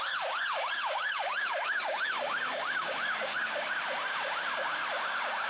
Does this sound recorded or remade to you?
remade